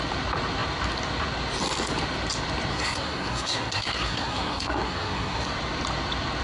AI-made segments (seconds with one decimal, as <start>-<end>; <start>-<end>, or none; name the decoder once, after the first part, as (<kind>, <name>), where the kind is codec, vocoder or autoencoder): 2.7-5.5 (codec, SNAC)